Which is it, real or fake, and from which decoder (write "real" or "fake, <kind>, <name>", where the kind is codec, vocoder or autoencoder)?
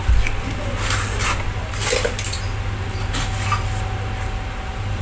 real